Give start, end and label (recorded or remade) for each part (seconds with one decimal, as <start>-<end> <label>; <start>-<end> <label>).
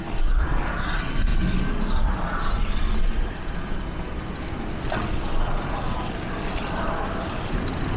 0.0-1.3 remade; 1.3-6.1 recorded; 6.1-8.0 remade